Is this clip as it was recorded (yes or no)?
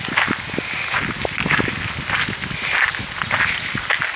yes